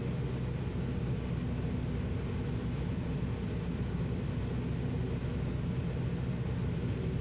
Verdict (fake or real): real